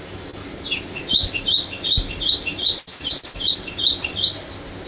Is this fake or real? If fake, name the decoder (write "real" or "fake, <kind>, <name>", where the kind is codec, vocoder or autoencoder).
real